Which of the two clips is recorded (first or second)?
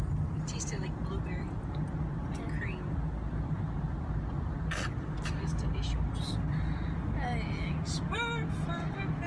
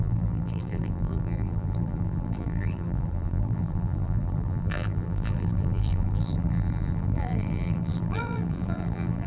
first